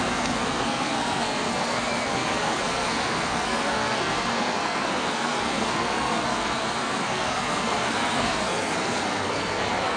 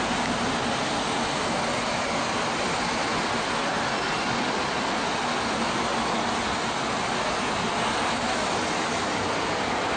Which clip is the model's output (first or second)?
first